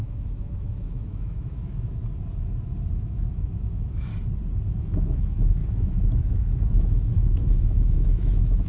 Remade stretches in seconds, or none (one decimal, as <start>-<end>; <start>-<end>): 0.0-2.0; 2.9-4.1; 4.7-8.7